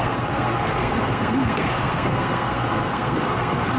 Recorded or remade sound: remade